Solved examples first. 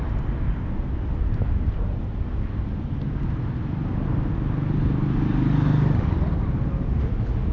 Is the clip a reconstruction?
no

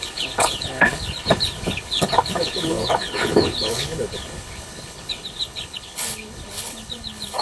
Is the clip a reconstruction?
yes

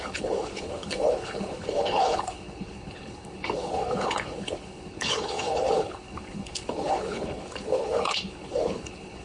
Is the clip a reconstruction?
yes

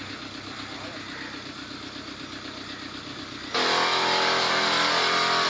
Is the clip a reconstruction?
no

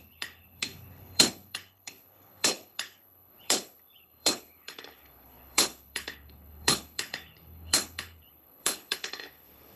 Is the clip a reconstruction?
yes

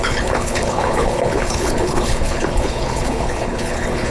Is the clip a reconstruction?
yes